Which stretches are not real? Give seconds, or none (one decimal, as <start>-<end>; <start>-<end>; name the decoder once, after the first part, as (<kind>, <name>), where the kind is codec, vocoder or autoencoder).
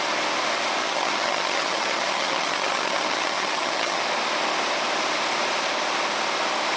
0.8-4.0 (vocoder, HiFi-GAN)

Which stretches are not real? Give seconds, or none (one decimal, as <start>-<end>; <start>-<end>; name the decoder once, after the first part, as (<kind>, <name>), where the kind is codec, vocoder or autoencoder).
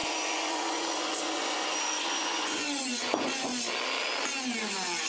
0.0-3.5 (vocoder, Vocos); 4.4-5.1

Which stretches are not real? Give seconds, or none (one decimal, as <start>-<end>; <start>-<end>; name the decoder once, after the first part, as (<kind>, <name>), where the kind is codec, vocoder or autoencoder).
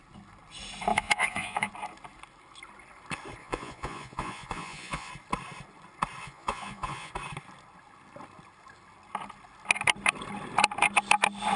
0.9-1.7 (vocoder, Vocos); 3.4-5.1; 6.2-7.1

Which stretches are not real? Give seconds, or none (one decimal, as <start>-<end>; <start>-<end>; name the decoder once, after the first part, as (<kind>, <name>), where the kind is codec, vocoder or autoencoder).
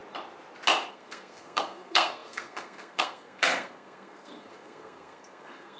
0.9-5.8 (codec, SNAC)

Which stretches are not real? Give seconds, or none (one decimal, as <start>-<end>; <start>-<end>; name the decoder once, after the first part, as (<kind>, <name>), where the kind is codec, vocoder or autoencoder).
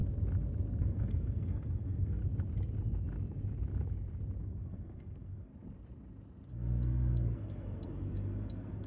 0.8-2.2 (codec, SNAC); 4.4-5.5; 6.5-8.9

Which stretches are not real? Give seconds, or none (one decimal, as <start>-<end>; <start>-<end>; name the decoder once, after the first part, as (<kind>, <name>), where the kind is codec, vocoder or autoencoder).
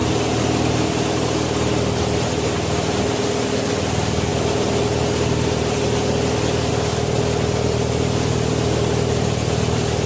none